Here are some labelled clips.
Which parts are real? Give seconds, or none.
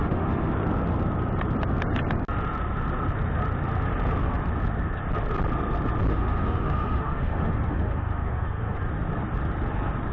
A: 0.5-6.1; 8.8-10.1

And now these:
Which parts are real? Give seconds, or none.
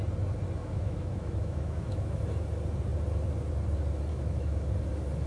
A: 0.0-0.6; 2.2-4.1; 4.7-5.3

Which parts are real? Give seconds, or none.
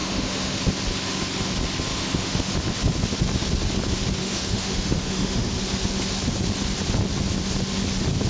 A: 0.6-1.9; 2.5-4.2; 5.5-8.3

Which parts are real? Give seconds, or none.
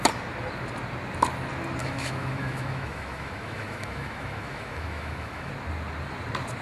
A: 0.0-1.8; 5.5-6.6